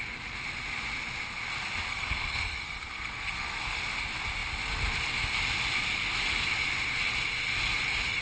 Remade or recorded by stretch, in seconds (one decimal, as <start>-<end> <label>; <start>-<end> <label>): 0.0-1.9 recorded; 1.9-3.8 remade; 3.8-8.2 recorded